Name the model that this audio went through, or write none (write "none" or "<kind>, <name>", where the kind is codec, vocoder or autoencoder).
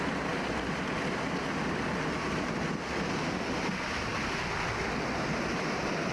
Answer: none